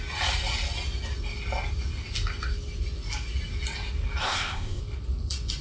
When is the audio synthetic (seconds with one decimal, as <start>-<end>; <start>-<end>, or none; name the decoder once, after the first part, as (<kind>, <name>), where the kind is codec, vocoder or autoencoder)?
4.2-4.8 (codec, ZipCodec)